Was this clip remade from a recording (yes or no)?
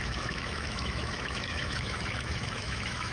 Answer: yes